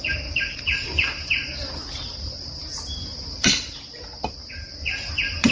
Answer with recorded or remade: remade